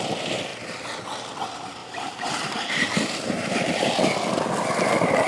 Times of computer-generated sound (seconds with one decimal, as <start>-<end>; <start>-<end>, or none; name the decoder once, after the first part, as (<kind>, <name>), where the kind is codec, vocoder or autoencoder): 1.8-3.9 (vocoder, BigVGAN v2)